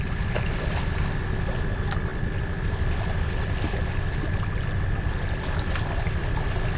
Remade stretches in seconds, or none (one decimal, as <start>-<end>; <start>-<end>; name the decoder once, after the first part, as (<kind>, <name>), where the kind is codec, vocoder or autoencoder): none